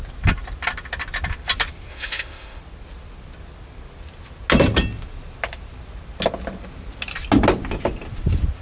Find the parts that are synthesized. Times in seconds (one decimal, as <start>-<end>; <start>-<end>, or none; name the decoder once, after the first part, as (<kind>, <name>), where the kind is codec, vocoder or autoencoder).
1.9-2.6 (autoencoder, DAC-VAE)